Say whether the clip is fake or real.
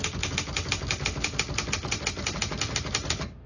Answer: real